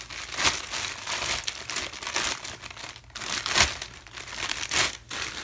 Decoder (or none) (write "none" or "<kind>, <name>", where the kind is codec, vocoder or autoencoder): none